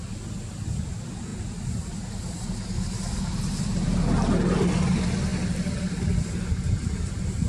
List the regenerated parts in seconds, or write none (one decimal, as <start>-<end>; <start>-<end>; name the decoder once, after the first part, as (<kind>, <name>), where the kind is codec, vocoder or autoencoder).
none